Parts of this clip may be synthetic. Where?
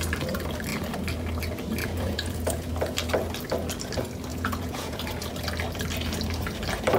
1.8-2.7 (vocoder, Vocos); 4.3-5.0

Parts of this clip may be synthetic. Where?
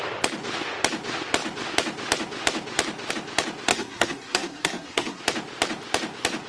3.7-5.2 (codec, SNAC)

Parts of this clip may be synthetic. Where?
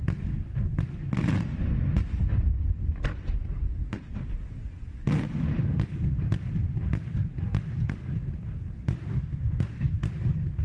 9.1-10.1 (codec, DAC)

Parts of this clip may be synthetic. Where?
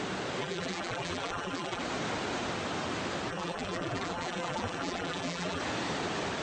0.4-1.8 (vocoder, BigVGAN v2); 3.3-5.6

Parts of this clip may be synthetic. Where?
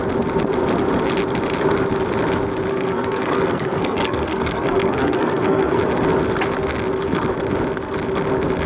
2.7-5.8 (codec, SNAC)